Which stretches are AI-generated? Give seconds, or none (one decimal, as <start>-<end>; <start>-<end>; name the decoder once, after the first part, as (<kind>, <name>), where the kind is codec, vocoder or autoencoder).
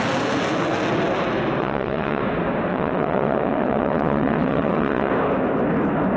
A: 1.6-2.2 (vocoder, WaveNeXt); 2.7-5.1